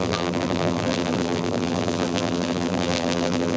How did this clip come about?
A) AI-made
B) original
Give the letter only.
A